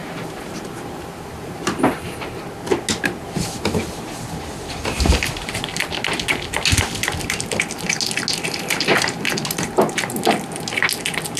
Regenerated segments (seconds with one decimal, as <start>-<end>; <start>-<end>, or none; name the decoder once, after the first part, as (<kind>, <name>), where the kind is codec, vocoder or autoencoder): 0.0-2.4 (vocoder, BigVGAN v2)